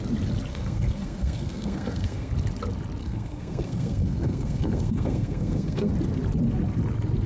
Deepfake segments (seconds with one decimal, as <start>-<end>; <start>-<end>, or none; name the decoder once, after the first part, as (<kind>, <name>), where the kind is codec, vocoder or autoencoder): 0.5-2.3 (codec, SNAC); 3.0-5.9

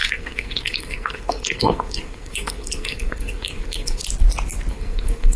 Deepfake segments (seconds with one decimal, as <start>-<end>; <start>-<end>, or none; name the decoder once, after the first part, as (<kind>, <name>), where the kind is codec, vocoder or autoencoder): 0.0-4.0 (codec, SNAC); 4.7-5.4

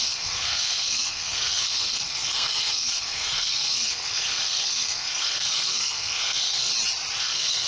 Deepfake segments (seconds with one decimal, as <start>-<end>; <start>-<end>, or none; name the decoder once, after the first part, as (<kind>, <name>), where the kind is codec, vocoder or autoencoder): 0.0-6.7 (codec, SNAC); 7.2-7.7

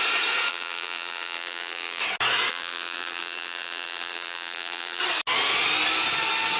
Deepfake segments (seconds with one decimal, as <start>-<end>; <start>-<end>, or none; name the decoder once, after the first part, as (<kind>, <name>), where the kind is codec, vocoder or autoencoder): 0.5-2.0 (vocoder, BigVGAN v2); 2.5-5.0

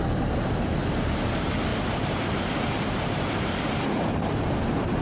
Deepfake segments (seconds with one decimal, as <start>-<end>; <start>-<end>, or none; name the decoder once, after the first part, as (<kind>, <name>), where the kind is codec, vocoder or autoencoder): 1.7-5.0 (vocoder, BigVGAN v2)

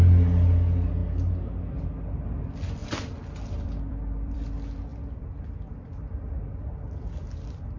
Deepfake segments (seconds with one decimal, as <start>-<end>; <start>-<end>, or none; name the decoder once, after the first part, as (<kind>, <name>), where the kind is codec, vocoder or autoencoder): 2.8-4.5 (vocoder, BigVGAN v2); 4.9-5.9

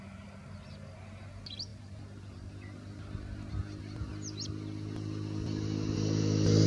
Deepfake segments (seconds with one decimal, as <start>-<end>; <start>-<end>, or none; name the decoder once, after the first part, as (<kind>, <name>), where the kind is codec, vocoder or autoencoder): none

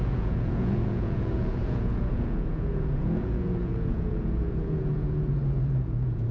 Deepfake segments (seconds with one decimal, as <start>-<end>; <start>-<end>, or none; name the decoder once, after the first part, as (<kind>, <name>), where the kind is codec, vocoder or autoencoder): 0.0-6.3 (vocoder, Vocos)